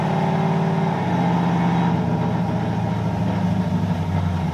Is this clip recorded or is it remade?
recorded